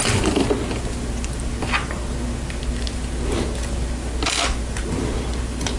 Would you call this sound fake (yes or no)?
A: no